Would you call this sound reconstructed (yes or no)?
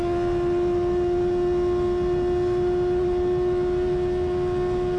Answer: no